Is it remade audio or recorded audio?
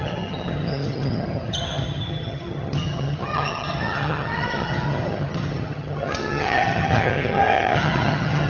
remade